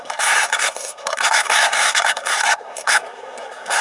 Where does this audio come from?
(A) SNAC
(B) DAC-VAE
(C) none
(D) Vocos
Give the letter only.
A